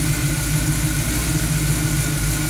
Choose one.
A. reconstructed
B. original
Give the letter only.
B